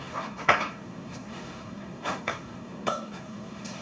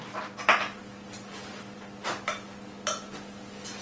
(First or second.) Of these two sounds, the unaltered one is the second